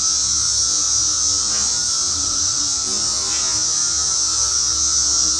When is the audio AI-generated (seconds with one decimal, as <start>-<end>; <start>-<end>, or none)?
2.1-2.6